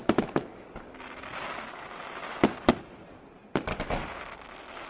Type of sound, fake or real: real